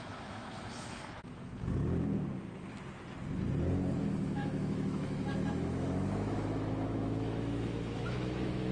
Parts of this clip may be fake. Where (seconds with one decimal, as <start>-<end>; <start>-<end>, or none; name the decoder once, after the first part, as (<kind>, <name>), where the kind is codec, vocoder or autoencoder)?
0.0-1.5 (autoencoder, DAC-VAE); 4.0-8.7